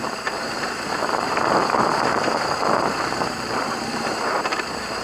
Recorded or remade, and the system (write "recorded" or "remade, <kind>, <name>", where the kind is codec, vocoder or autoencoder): remade, vocoder, BigVGAN v2